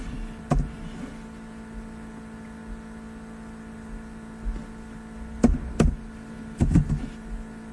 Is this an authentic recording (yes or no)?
yes